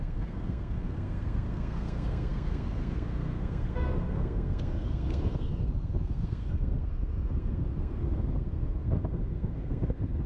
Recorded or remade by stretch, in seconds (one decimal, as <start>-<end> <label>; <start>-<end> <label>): 0.0-10.3 remade